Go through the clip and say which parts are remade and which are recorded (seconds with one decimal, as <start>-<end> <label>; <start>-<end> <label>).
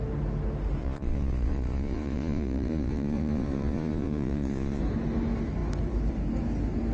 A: 0.0-0.8 recorded; 0.8-4.8 remade; 4.8-6.9 recorded